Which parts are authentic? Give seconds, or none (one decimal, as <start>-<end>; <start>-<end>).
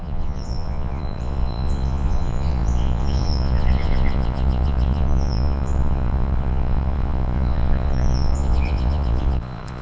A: none